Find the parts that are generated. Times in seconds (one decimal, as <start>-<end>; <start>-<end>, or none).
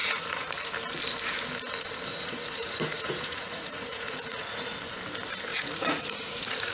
0.0-0.7; 2.1-4.8; 5.5-6.7